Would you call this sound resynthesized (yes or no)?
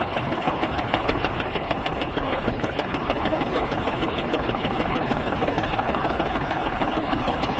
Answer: yes